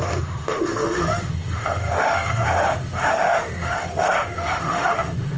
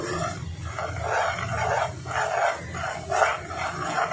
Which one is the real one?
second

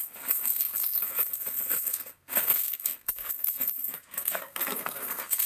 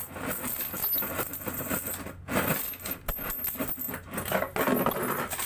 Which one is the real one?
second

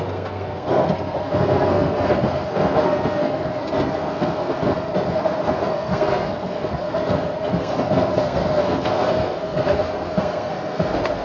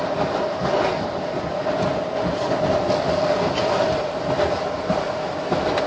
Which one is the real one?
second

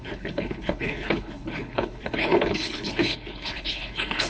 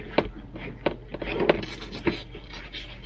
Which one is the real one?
second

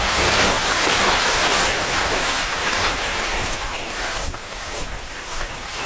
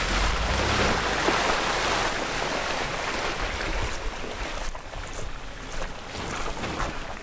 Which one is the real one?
second